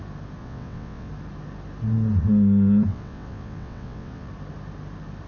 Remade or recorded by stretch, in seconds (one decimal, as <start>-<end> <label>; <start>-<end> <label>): 0.0-0.4 recorded; 0.4-1.1 remade; 1.1-2.9 recorded; 2.9-4.3 remade; 4.3-5.3 recorded